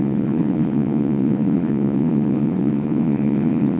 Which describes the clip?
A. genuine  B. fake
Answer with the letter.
B